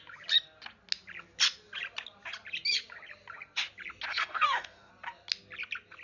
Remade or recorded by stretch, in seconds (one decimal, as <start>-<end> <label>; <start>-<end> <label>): 0.0-4.1 recorded; 4.1-4.9 remade; 4.9-6.0 recorded